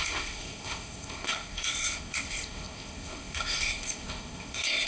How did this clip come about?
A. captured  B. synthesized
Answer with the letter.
B